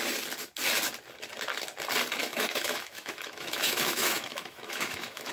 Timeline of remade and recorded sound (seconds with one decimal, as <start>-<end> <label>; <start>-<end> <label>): 0.0-2.2 recorded; 2.2-5.3 remade